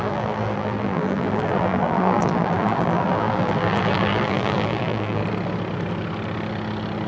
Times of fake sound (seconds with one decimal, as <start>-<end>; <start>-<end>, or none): 0.0-5.2